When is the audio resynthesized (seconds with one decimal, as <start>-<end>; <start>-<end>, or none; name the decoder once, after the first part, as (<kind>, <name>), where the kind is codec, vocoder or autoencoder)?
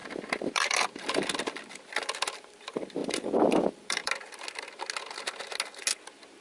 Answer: 0.0-2.6 (vocoder, BigVGAN v2); 3.0-4.1